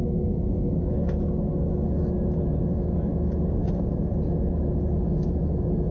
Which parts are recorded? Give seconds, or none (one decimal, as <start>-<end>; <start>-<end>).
0.0-3.6; 4.3-5.9